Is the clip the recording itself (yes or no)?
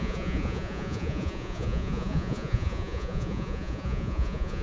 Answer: no